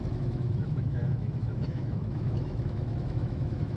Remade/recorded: remade